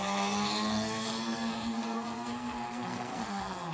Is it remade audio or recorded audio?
remade